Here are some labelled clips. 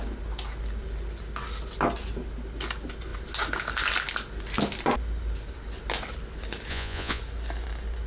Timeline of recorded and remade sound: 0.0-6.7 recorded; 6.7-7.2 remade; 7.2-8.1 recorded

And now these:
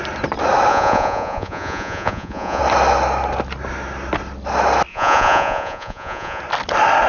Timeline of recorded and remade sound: 0.0-0.7 recorded; 0.7-2.6 remade; 2.6-4.9 recorded; 4.9-6.4 remade; 6.4-7.1 recorded

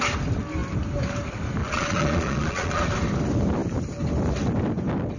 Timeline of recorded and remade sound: 0.0-1.6 recorded; 1.6-2.8 remade; 2.8-5.2 recorded